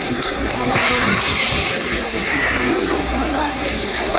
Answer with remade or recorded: remade